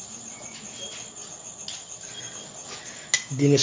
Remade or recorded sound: recorded